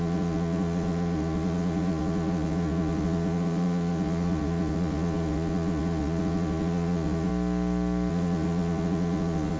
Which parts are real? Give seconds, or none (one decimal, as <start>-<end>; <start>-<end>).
7.3-8.1

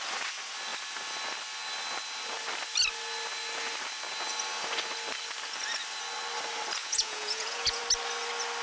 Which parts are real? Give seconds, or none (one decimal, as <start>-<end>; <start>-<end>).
0.0-6.8; 7.8-8.6